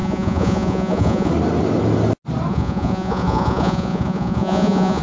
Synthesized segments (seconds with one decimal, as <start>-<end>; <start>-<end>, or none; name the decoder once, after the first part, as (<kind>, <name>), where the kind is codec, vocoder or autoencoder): 0.0-1.3 (vocoder, Vocos); 2.5-5.0